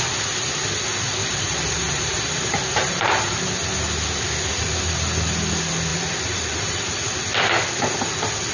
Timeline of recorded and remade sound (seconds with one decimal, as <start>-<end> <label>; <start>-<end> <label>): 0.0-1.2 recorded; 1.2-3.4 remade; 3.4-5.9 recorded; 5.9-7.0 remade; 7.0-8.5 recorded